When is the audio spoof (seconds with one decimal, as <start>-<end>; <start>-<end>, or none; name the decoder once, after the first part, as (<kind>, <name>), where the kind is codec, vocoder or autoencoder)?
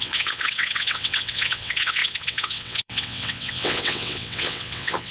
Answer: 0.0-5.1 (vocoder, WaveNeXt)